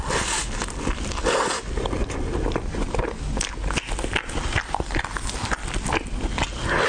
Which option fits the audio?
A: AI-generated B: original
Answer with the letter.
B